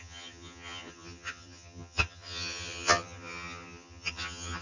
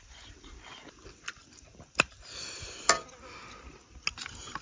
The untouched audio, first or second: second